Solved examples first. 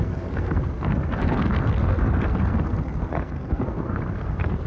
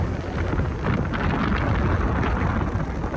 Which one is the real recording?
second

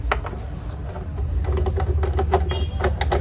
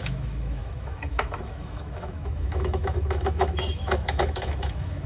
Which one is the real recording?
first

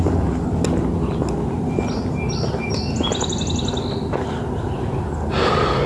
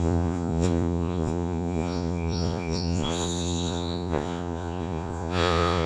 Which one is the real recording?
first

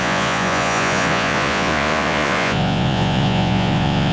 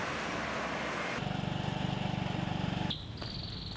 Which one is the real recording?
second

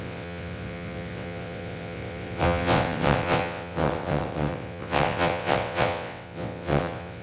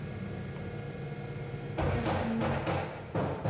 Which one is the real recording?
second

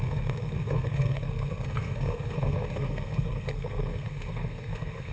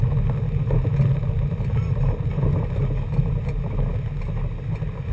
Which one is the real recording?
second